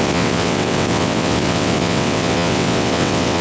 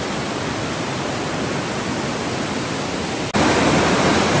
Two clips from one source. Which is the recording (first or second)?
second